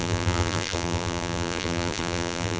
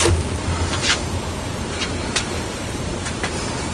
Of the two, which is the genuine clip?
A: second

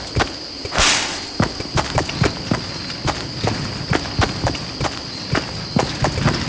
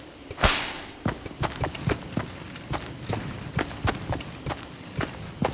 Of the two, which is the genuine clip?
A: first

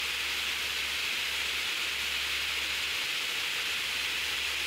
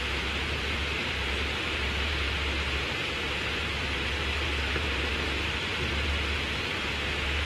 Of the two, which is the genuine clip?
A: first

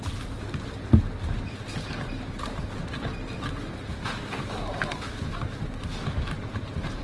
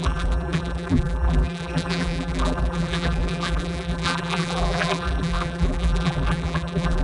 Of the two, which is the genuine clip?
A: first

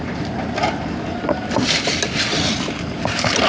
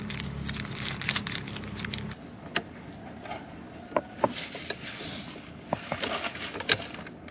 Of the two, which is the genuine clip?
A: second